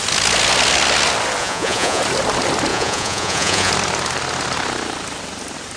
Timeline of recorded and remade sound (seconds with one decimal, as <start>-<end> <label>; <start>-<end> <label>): 0.0-1.4 recorded; 1.4-2.0 remade; 2.0-2.7 recorded; 2.7-3.7 remade; 3.7-5.8 recorded